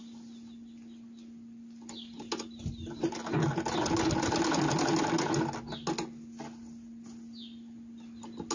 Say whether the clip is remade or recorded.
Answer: recorded